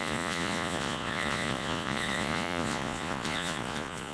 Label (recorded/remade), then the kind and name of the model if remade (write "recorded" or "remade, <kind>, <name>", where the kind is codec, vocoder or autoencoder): remade, vocoder, Vocos